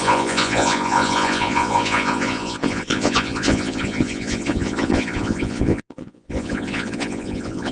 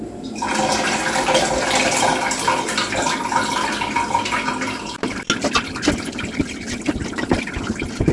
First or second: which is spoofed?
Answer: first